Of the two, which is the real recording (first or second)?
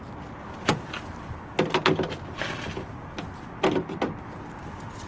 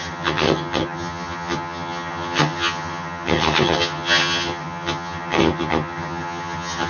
first